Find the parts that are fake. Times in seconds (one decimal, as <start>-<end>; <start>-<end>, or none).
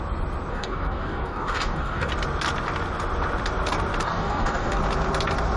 0.5-2.1; 4.0-4.8